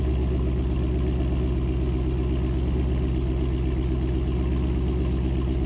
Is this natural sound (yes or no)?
yes